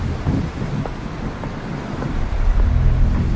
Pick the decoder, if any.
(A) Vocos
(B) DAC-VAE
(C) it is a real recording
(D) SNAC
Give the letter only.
C